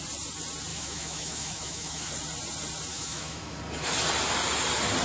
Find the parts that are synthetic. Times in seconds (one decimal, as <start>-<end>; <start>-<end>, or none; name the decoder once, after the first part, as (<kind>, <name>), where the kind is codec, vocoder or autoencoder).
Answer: 0.7-2.1 (autoencoder, DAC-VAE); 2.9-3.6